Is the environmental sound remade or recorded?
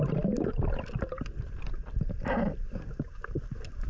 remade